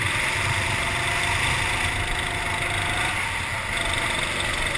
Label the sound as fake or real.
real